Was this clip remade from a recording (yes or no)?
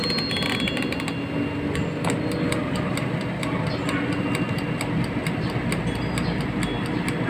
no